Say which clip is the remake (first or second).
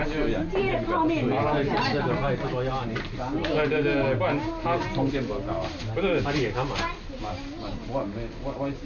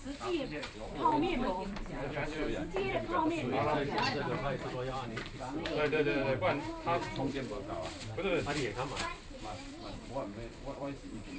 second